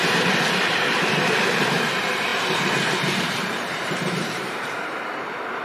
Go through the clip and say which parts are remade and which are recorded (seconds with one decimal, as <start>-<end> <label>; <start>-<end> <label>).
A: 0.0-1.4 recorded; 1.4-5.6 remade